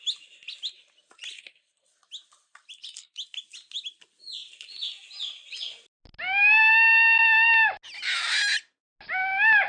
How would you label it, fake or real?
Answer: real